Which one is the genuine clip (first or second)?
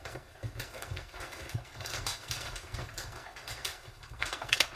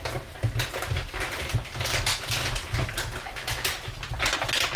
second